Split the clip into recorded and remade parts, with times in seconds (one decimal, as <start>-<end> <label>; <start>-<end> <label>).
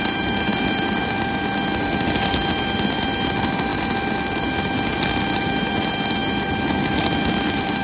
0.0-7.8 recorded